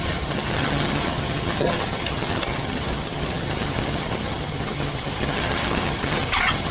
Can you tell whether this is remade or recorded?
remade